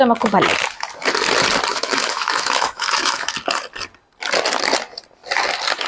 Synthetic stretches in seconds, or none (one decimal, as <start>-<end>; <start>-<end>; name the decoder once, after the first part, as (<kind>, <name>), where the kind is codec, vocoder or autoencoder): 1.7-3.4 (autoencoder, DAC-VAE)